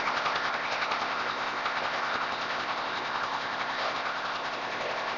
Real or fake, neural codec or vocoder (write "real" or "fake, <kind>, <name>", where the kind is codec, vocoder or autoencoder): fake, codec, ZipCodec